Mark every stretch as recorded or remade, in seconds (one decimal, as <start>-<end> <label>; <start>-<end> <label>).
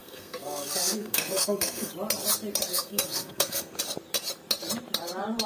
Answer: 0.0-1.9 remade; 1.9-2.7 recorded; 2.7-3.8 remade; 3.8-5.5 recorded